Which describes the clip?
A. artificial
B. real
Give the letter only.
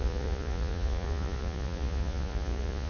A